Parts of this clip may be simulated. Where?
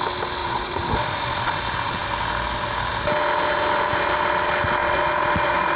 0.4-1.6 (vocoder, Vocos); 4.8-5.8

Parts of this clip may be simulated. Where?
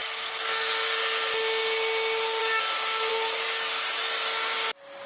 0.0-1.0 (codec, SNAC)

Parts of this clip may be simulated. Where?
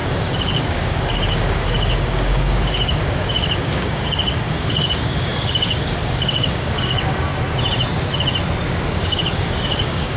0.0-7.3 (codec, DAC); 8.7-10.2